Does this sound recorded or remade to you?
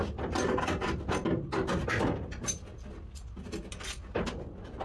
recorded